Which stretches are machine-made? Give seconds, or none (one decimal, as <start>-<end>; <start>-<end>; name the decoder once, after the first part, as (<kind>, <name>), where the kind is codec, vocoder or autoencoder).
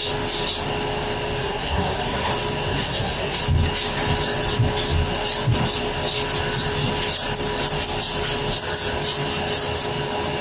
1.4-2.3 (codec, SNAC); 2.7-3.4